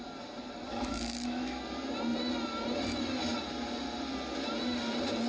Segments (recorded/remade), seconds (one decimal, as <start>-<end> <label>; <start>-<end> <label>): 0.0-0.7 recorded; 0.7-1.6 remade; 1.6-5.3 recorded